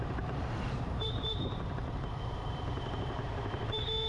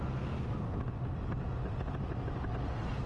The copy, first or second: first